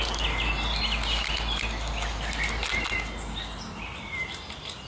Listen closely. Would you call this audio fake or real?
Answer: real